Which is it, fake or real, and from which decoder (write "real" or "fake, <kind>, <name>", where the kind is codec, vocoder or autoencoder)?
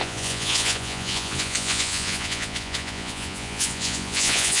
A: fake, vocoder, Vocos